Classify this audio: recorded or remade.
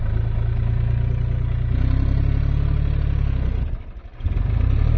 recorded